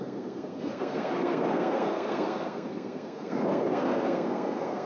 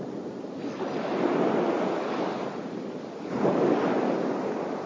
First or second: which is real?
second